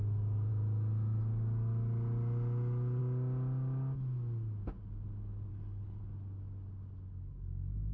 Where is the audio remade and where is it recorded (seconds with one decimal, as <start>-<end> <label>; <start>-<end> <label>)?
0.0-5.5 recorded; 5.5-6.0 remade; 6.0-7.9 recorded